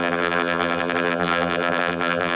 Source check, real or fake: fake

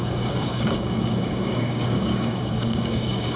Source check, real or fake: fake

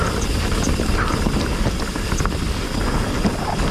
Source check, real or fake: real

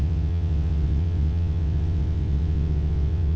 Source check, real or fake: fake